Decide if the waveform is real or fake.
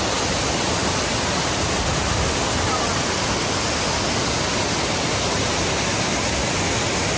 real